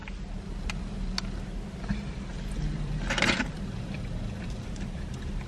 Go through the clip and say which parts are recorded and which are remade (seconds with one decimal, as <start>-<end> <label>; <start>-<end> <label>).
0.0-2.3 recorded; 2.3-5.5 remade